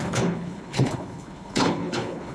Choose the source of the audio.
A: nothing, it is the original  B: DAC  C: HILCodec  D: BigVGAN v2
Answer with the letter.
C